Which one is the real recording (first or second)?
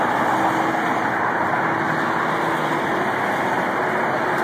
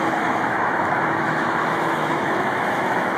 first